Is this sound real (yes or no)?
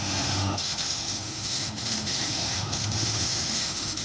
no